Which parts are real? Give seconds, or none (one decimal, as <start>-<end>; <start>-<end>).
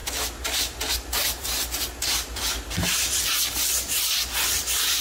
0.0-5.0